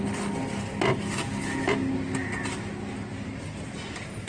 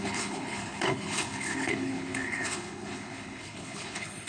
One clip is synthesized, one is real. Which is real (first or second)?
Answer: first